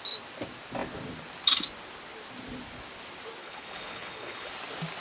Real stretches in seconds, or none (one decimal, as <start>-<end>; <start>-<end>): 0.0-3.4; 4.5-5.0